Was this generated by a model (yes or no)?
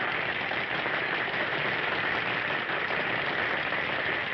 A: yes